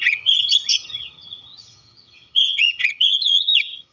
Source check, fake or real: fake